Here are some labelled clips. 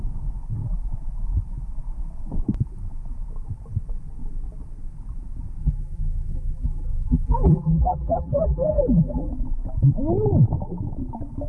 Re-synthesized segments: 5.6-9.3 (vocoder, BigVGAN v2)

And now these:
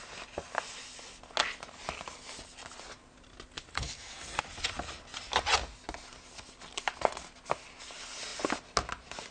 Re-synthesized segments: 3.7-4.4 (codec, SNAC)

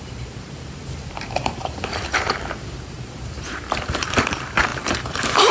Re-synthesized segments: 0.0-5.5 (vocoder, BigVGAN v2)

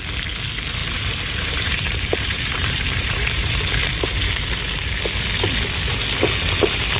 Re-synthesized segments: 0.8-4.3 (vocoder, BigVGAN v2)

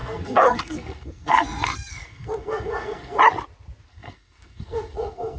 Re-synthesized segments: 0.0-3.2 (codec, SNAC); 3.9-5.4

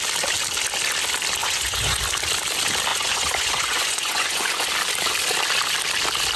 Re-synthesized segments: 1.4-2.0 (vocoder, Vocos); 2.9-4.7

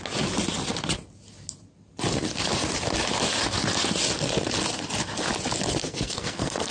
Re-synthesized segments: 5.8-6.7 (codec, SNAC)